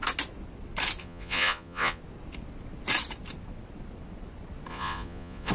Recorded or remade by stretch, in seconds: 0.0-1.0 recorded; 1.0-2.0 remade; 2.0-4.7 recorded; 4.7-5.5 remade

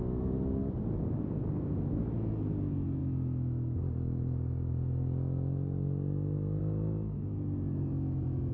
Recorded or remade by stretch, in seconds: 0.0-8.5 recorded

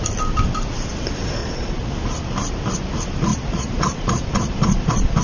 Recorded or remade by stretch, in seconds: 0.0-1.4 recorded; 1.4-1.9 remade; 1.9-3.3 recorded; 3.3-5.2 remade

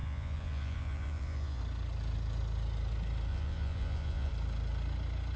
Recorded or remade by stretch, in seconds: 0.0-1.6 remade; 1.6-3.3 recorded; 3.3-4.3 remade; 4.3-5.4 recorded

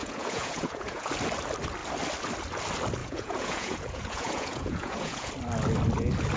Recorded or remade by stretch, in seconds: 0.0-1.1 remade; 1.1-3.0 recorded; 3.0-5.3 remade; 5.3-6.4 recorded

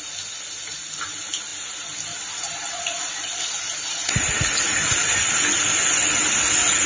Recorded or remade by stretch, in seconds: 0.0-6.9 recorded

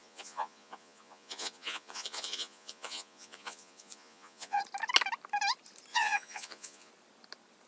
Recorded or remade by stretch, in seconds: 0.0-4.6 remade; 4.6-5.9 recorded; 5.9-6.9 remade; 6.9-7.7 recorded

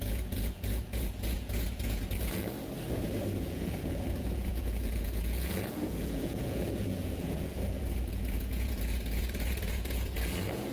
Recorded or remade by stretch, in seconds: 0.0-2.4 remade; 2.4-3.4 recorded; 3.4-10.7 remade